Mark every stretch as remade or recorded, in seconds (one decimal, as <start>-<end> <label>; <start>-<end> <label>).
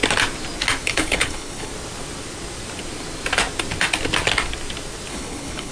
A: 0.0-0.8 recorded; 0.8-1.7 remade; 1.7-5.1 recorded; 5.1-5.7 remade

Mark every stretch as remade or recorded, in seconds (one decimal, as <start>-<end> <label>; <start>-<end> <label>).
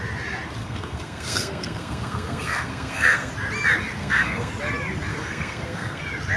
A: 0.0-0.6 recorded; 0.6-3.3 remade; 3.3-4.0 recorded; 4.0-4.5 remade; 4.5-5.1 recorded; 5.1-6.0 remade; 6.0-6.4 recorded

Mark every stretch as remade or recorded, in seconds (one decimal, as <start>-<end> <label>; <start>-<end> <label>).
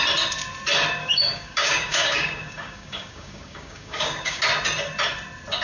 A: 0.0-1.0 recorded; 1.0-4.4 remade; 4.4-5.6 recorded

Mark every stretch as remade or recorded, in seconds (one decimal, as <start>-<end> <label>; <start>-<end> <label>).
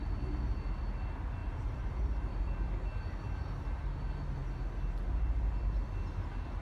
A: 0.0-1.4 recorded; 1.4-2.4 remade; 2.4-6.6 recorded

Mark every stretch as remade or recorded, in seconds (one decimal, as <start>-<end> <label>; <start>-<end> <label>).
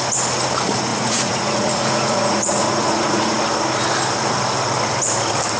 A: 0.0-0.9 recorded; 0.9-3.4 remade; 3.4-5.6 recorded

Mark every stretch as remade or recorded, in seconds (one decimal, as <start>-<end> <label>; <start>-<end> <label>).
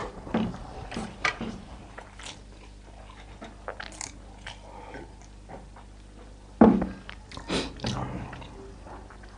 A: 0.0-2.2 remade; 2.2-9.4 recorded